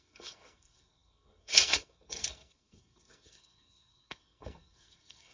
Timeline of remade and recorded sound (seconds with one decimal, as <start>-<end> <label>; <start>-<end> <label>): 0.0-5.3 remade